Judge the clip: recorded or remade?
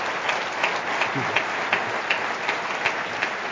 recorded